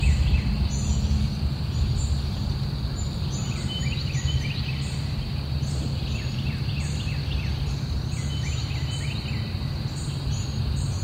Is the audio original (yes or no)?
yes